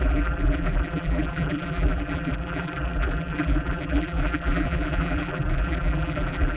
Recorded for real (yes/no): no